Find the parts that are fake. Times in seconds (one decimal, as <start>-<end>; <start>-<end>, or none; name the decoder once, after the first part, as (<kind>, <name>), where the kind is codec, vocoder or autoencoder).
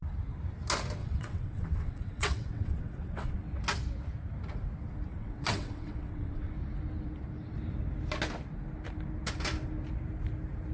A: 1.0-3.6 (vocoder, WaveNeXt); 5.1-6.5